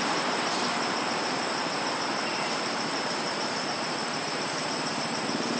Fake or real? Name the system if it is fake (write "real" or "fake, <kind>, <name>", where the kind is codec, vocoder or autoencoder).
fake, vocoder, BigVGAN v2